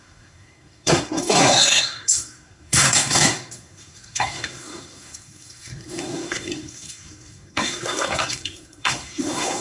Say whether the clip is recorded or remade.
remade